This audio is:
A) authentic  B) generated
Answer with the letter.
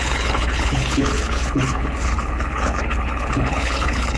B